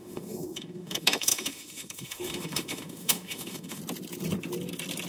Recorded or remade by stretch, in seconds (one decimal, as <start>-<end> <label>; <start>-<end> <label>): 0.0-3.8 remade; 3.8-5.1 recorded